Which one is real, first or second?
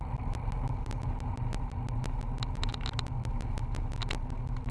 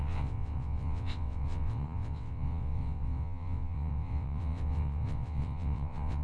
first